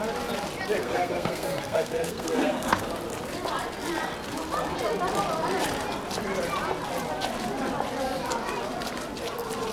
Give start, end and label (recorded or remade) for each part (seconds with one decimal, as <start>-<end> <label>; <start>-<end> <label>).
0.0-0.8 recorded; 0.8-2.9 remade; 2.9-9.7 recorded

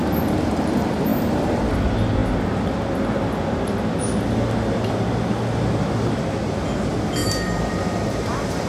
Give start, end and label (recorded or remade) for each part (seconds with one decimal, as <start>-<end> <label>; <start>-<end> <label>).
0.0-1.1 recorded; 1.1-1.6 remade; 1.6-7.2 recorded; 7.2-8.7 remade

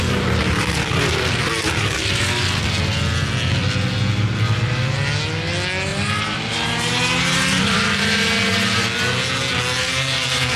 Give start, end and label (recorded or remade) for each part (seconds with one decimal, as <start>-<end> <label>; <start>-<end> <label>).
0.0-5.9 recorded; 5.9-8.8 remade; 8.8-10.6 recorded

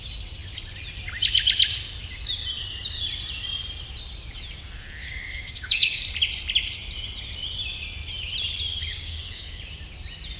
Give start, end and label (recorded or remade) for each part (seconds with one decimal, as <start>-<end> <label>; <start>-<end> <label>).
0.0-5.0 recorded; 5.0-6.0 remade; 6.0-8.8 recorded; 8.8-9.6 remade; 9.6-10.4 recorded